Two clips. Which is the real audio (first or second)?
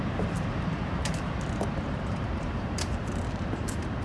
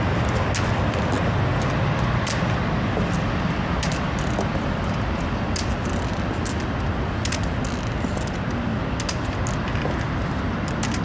second